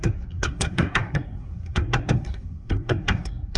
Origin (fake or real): fake